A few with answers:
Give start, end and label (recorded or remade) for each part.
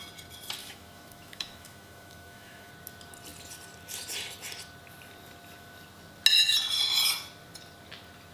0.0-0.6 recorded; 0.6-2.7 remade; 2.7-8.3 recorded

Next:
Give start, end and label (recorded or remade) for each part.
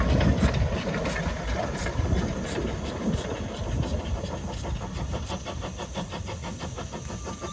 0.0-7.5 recorded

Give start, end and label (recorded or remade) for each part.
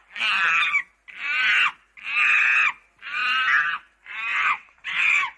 0.0-4.3 recorded; 4.3-5.4 remade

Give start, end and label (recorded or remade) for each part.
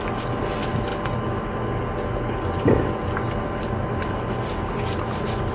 0.0-5.5 recorded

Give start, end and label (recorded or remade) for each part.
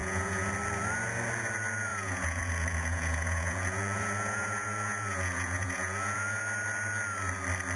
0.0-0.5 remade; 0.5-1.9 recorded; 1.9-6.4 remade; 6.4-7.8 recorded